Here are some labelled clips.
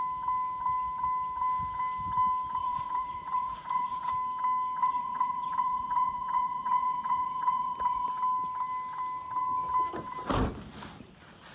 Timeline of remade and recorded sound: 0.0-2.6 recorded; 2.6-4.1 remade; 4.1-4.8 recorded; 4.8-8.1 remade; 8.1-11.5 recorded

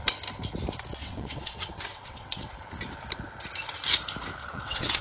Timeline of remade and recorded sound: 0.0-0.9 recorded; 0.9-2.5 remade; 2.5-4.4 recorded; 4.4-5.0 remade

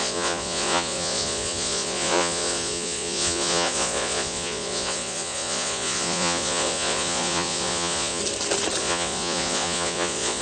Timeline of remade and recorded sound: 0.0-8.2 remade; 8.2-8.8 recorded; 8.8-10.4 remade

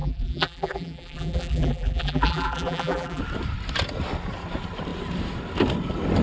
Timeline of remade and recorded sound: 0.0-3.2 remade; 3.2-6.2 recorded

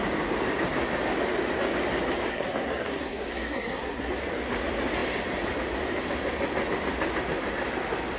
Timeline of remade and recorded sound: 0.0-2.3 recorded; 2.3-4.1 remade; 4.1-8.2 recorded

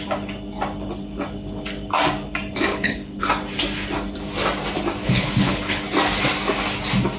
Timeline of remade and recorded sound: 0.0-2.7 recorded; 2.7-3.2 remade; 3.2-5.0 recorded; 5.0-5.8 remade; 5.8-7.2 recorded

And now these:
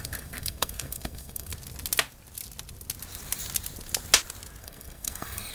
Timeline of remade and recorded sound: 0.0-1.5 remade; 1.5-4.6 recorded; 4.6-5.5 remade

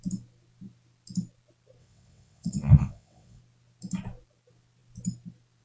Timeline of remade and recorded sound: 0.0-1.8 recorded; 1.8-3.4 remade; 3.4-5.6 recorded